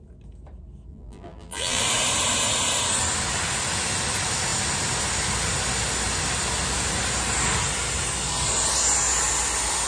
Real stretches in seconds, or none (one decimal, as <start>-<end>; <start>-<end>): 0.0-0.9; 1.8-9.9